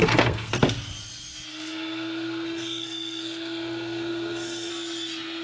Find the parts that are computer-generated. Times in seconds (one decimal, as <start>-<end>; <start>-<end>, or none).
0.0-0.5; 1.5-4.7